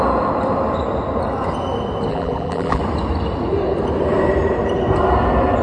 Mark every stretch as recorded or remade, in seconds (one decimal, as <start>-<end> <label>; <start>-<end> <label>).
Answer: 0.0-2.1 recorded; 2.1-2.8 remade; 2.8-5.6 recorded